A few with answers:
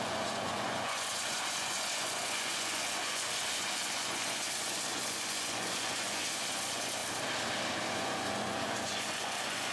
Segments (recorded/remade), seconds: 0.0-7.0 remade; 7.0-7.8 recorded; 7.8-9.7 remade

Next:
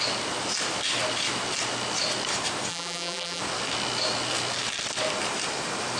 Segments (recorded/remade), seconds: 0.0-2.7 recorded; 2.7-3.4 remade; 3.4-6.0 recorded